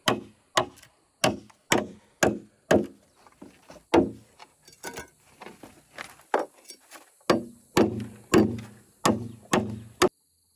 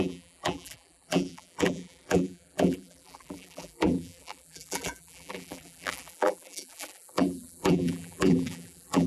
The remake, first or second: second